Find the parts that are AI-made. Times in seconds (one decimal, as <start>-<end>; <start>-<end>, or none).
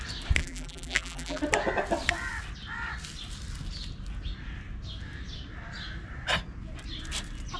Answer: 0.4-1.4